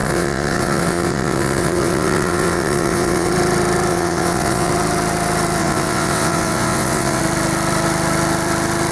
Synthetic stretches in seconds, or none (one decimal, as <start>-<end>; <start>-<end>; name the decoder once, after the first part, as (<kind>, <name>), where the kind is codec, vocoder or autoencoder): 0.0-3.3 (vocoder, WaveNeXt); 3.9-4.7; 5.6-7.2